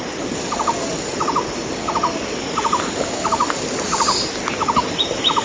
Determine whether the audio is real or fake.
real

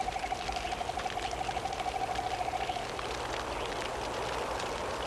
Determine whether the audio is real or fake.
real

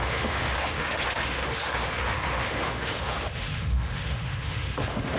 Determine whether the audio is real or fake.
fake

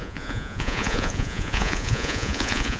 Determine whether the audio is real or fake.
fake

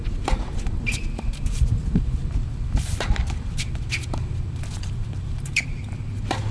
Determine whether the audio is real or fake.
fake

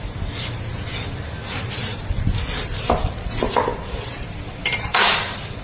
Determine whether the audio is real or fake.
fake